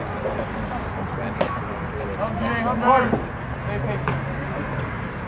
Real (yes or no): yes